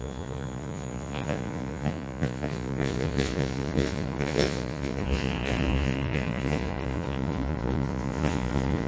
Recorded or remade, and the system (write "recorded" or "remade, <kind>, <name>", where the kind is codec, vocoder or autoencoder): remade, vocoder, Vocos